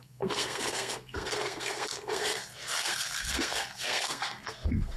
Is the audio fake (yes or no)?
yes